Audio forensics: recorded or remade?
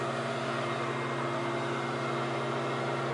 recorded